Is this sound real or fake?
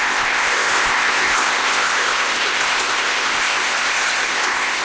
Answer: fake